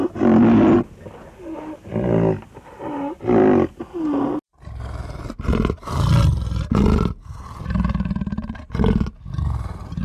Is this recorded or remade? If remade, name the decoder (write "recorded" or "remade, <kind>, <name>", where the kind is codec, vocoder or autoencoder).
recorded